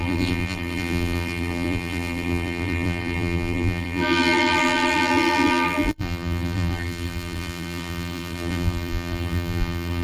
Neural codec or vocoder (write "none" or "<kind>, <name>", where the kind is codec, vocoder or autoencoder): vocoder, BigVGAN v2